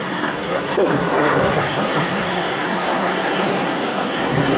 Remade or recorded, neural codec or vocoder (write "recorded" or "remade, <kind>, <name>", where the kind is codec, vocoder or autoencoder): remade, codec, SNAC